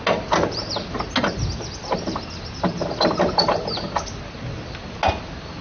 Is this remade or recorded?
recorded